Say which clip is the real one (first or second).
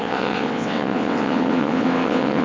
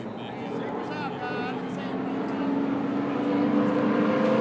second